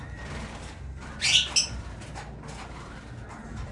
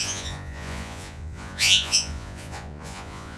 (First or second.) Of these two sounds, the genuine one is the first